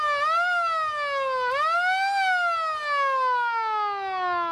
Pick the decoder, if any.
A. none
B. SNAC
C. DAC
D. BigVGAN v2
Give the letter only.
A